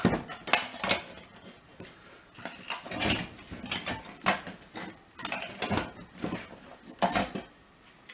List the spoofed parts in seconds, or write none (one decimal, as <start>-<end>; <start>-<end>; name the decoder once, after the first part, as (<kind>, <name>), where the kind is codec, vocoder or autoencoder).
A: none